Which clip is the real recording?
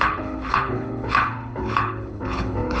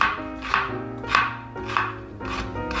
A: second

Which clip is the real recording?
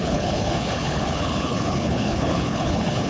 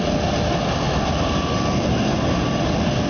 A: second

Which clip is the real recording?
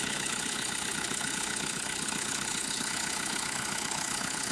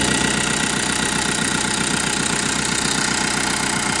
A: second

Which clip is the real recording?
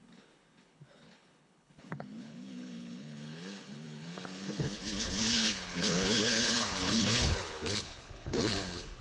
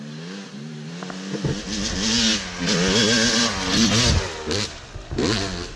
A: second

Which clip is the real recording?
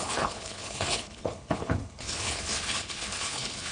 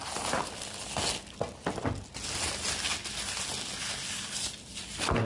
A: second